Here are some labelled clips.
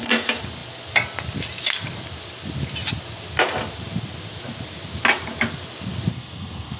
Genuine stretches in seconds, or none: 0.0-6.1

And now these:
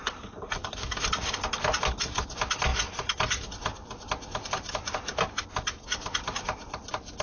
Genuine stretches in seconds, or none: 0.0-0.6; 1.2-7.2

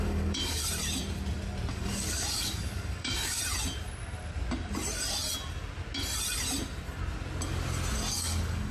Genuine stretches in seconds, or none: 0.6-1.7; 3.4-8.1

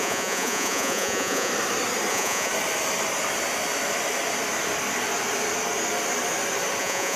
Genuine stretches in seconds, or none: 1.5-2.1; 2.5-6.8

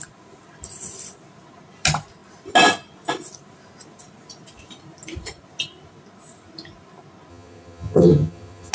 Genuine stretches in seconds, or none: 0.0-7.3

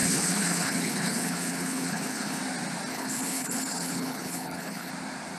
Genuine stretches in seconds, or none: 2.4-2.9; 4.9-5.4

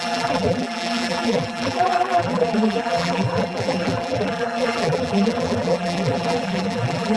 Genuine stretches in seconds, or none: none

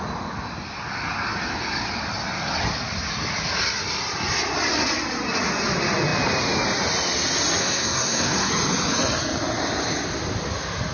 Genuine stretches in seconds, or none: 0.0-7.6; 8.5-10.9